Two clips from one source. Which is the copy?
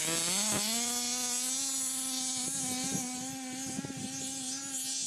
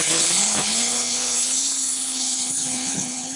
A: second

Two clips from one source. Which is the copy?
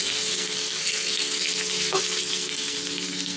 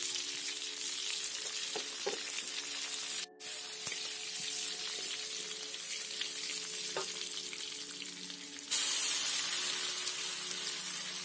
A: first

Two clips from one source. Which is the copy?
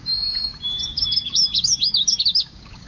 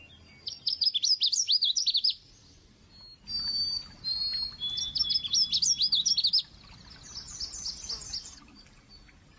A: first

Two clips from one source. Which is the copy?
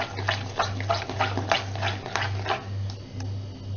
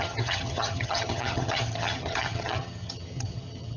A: second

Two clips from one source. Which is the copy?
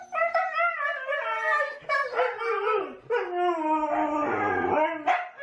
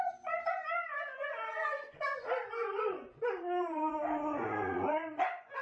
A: second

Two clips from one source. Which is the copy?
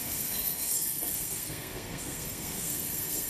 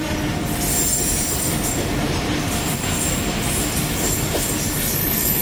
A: first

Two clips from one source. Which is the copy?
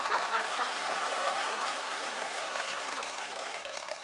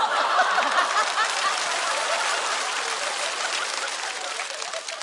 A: first